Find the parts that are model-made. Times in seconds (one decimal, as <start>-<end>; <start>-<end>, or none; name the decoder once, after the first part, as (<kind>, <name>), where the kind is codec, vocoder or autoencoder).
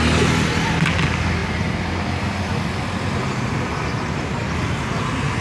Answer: none